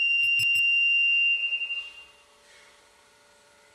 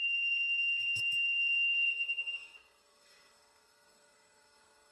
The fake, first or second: second